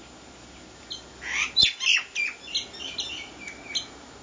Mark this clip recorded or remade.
recorded